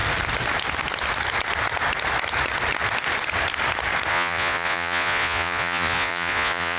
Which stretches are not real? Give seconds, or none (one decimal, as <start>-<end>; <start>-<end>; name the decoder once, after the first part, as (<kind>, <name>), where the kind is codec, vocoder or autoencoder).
4.1-6.8 (vocoder, Vocos)

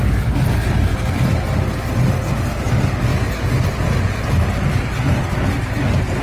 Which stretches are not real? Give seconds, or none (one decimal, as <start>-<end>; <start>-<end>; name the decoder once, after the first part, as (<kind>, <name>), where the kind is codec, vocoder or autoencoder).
none

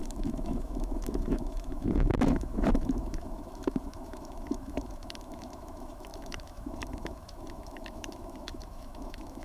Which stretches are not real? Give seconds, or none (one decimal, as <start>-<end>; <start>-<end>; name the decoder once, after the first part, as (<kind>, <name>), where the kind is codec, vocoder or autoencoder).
0.0-9.4 (autoencoder, DAC-VAE)

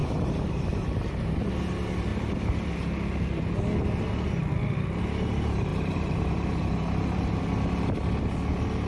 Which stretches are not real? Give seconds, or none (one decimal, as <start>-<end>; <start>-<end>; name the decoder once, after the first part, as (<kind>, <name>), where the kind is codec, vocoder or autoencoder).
0.0-1.5 (vocoder, BigVGAN v2); 5.7-7.4

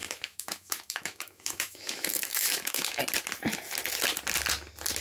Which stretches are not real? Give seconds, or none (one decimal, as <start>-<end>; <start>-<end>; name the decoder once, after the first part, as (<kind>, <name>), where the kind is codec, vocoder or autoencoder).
0.0-3.0 (autoencoder, DAC-VAE)

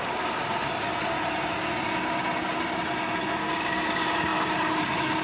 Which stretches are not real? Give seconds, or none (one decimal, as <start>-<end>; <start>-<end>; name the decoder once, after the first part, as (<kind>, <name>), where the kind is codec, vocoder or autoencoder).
0.0-0.4 (codec, DAC); 3.5-5.2

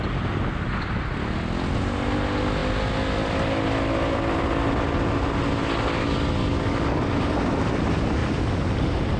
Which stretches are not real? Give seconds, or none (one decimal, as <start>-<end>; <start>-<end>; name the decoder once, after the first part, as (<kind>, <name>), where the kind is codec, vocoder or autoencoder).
6.4-7.0 (codec, DAC)

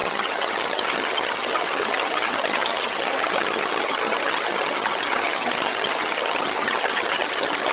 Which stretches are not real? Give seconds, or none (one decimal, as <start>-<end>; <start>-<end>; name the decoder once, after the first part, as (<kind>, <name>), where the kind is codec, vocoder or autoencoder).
0.0-7.7 (vocoder, HiFi-GAN)